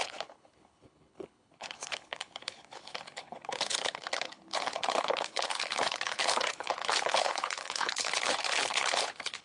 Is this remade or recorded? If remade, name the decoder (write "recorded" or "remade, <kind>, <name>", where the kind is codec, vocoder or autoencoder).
remade, codec, HILCodec